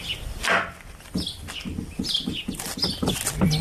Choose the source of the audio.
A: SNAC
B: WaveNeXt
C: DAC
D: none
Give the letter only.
D